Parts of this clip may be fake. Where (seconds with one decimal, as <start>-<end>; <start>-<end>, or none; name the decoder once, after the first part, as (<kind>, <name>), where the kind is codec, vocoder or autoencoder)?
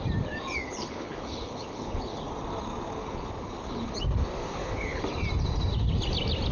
0.8-2.2 (codec, HILCodec); 3.0-3.9; 4.4-5.0